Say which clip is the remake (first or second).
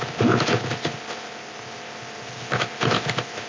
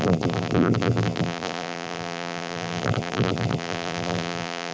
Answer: second